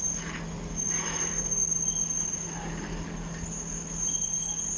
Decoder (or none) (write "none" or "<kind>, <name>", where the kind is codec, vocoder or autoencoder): none